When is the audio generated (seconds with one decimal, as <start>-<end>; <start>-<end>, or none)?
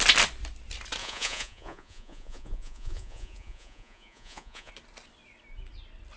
1.0-4.7